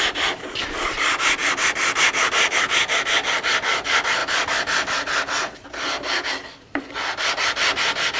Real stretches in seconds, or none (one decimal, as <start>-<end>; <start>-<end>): 0.0-8.2